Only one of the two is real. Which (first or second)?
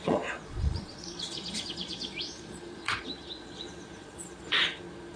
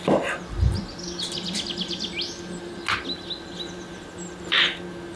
second